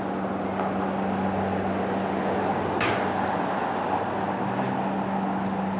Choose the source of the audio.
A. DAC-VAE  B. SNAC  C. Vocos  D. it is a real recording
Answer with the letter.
D